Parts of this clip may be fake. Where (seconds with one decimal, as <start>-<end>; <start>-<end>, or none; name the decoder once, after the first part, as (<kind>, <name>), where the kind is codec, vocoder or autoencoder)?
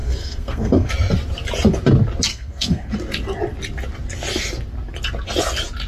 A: 0.0-0.9 (codec, SNAC); 2.3-2.9